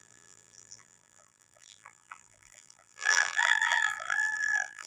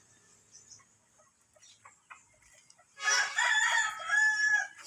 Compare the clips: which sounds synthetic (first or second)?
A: first